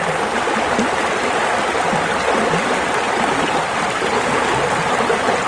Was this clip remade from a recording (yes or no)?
no